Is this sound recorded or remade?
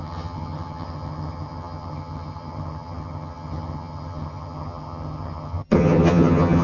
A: remade